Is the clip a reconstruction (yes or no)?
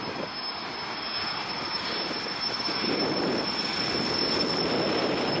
no